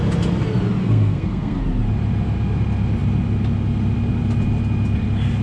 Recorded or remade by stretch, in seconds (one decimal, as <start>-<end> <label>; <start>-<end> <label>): 0.0-0.8 recorded; 0.8-1.6 remade; 1.6-5.4 recorded